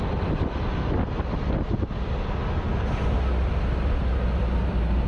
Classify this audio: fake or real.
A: real